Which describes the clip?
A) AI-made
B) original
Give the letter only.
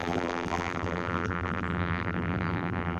A